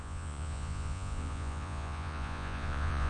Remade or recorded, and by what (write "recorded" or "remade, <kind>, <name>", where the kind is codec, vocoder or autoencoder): remade, vocoder, Vocos